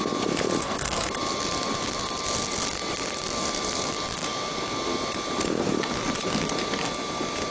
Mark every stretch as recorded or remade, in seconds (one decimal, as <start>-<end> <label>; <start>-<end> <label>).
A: 0.0-0.6 recorded; 0.6-1.1 remade; 1.1-7.5 recorded